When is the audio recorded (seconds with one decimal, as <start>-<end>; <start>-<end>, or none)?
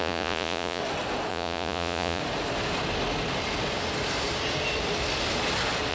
0.8-1.3; 2.2-5.9